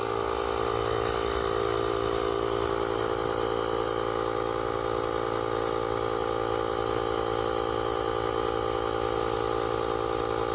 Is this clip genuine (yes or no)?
yes